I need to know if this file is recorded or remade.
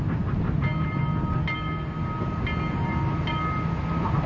recorded